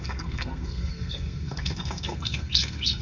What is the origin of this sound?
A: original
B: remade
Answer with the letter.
B